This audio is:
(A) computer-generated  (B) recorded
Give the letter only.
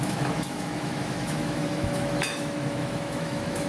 A